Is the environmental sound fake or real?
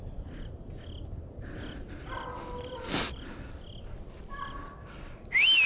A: real